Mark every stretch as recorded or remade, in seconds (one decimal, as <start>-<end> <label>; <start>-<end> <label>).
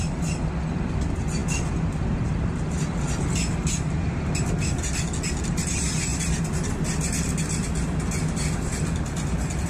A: 0.0-9.7 recorded